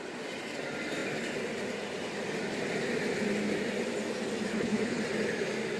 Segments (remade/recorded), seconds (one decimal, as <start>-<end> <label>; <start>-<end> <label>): 0.0-4.5 recorded; 4.5-5.0 remade; 5.0-5.8 recorded